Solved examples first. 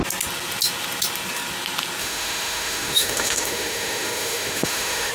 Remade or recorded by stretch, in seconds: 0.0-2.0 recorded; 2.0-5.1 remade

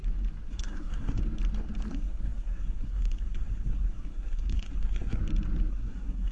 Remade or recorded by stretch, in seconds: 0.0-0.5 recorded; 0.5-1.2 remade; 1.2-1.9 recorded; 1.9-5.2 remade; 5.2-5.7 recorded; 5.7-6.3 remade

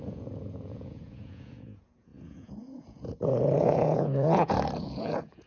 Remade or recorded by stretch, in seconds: 0.0-5.5 remade

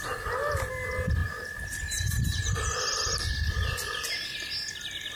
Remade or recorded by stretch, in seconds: 0.0-1.2 recorded; 1.2-3.3 remade; 3.3-5.2 recorded

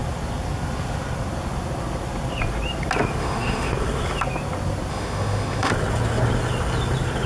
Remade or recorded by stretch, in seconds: 0.0-3.2 recorded; 3.2-3.7 remade; 3.7-4.9 recorded; 4.9-5.7 remade; 5.7-7.3 recorded